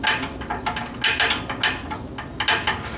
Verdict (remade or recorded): recorded